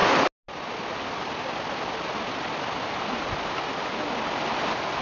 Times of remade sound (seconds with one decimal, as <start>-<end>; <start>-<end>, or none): none